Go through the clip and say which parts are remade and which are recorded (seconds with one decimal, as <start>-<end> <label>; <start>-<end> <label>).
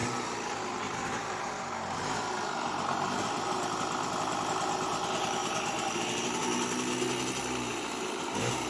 0.0-5.4 recorded; 5.4-6.0 remade; 6.0-7.7 recorded; 7.7-8.7 remade